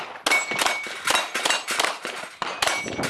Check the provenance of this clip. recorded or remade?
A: recorded